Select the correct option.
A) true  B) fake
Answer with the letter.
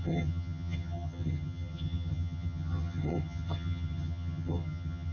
B